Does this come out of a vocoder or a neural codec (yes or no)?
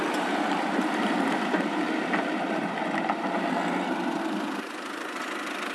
yes